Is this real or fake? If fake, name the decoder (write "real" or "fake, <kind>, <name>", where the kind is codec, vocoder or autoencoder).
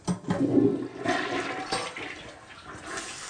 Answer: real